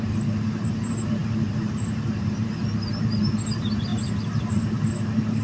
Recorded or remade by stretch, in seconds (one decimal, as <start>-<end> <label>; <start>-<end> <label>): 0.0-5.4 remade